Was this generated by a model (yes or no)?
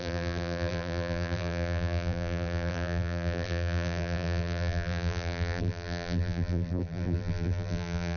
yes